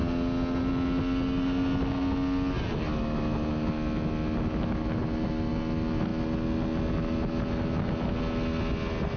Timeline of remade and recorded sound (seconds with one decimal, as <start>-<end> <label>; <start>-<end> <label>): 0.0-9.2 recorded